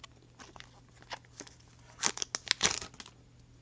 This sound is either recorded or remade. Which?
recorded